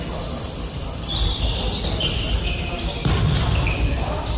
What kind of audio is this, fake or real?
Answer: fake